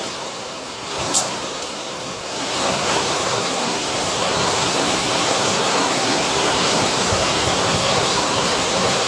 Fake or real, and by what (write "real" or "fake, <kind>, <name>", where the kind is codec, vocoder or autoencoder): fake, codec, SNAC